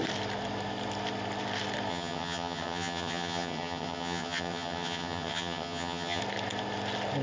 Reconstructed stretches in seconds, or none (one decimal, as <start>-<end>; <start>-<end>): 1.9-6.2